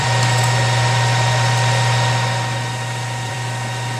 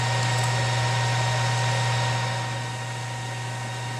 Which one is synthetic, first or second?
first